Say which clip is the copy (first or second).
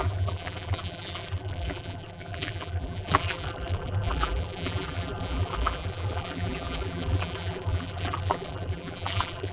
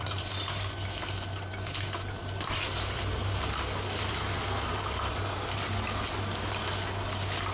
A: first